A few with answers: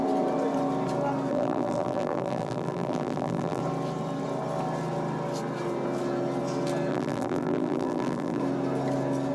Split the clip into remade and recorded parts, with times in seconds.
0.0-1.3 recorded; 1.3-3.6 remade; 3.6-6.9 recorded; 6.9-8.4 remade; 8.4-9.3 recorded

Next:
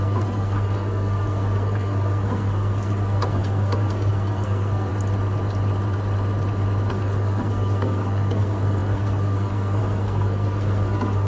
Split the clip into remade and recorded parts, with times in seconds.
0.0-4.9 remade; 4.9-6.9 recorded; 6.9-11.3 remade

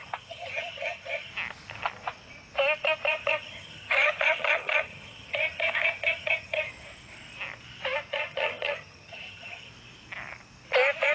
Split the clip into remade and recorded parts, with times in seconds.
0.0-1.3 remade; 1.3-3.1 recorded; 3.1-6.7 remade; 6.7-8.1 recorded; 8.1-9.7 remade; 9.7-11.1 recorded